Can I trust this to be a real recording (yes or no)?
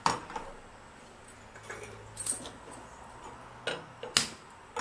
yes